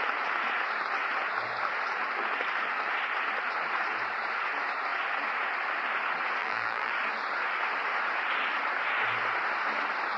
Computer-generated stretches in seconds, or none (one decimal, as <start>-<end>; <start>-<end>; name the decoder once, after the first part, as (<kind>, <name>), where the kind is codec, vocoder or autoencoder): 6.4-6.9 (vocoder, BigVGAN v2)